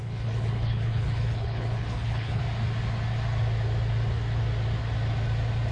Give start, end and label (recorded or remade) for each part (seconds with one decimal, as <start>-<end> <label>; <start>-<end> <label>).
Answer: 0.0-2.4 remade; 2.4-5.7 recorded